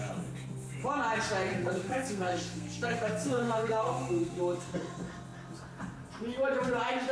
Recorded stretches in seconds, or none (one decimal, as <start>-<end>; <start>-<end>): 0.0-1.5; 4.4-7.1